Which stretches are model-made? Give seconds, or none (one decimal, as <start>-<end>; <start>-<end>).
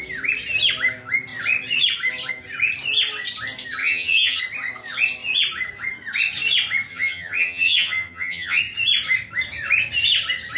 3.8-4.4; 6.9-8.6